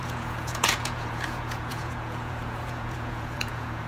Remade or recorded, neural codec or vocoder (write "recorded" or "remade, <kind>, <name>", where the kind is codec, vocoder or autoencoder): remade, vocoder, Vocos